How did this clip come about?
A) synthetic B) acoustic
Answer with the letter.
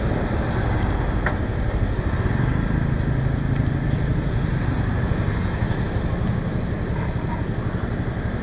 B